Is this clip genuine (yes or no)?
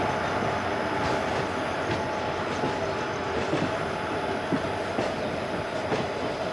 yes